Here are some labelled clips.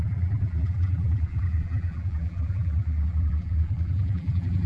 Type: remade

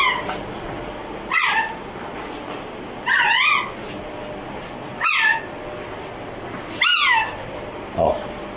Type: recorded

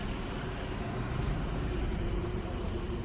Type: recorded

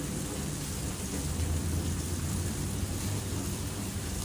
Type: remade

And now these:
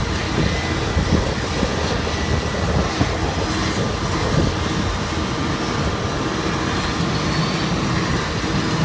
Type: recorded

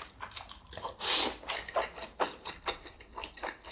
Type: recorded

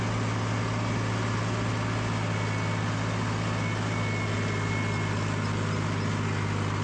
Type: recorded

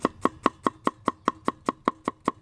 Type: recorded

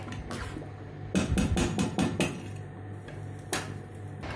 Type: recorded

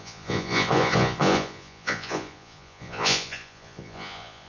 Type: remade